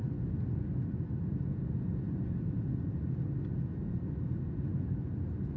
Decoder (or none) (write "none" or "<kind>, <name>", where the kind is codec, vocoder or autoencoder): none